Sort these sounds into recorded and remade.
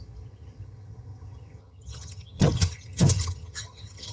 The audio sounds remade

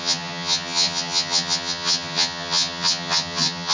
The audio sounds remade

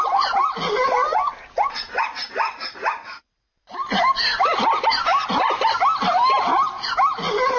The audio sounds recorded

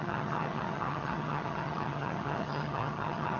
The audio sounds remade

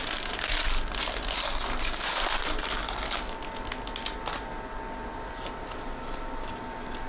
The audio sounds recorded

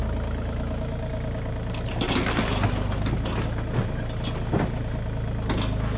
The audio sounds recorded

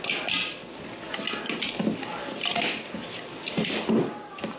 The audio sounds recorded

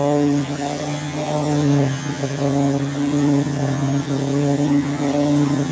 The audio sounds remade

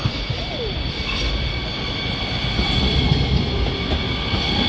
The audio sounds recorded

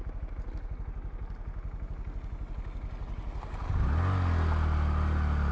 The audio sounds recorded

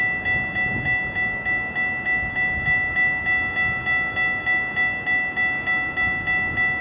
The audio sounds recorded